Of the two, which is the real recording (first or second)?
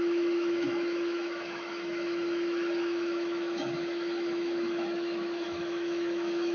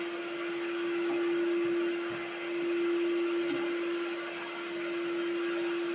second